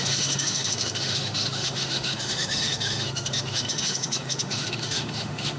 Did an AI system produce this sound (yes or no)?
yes